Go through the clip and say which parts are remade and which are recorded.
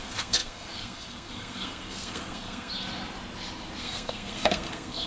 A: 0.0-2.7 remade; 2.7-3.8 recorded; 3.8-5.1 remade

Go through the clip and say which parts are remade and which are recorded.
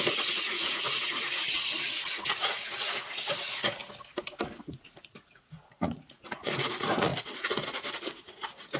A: 0.0-3.8 remade; 3.8-4.6 recorded; 4.6-8.8 remade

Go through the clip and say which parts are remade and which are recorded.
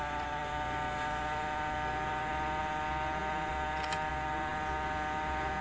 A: 0.0-5.6 recorded